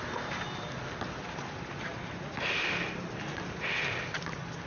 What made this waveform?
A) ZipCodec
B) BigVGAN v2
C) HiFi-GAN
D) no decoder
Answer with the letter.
D